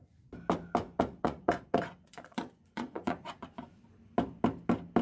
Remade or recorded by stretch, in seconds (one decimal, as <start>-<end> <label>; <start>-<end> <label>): 0.0-0.8 recorded; 0.8-3.8 remade; 3.8-5.0 recorded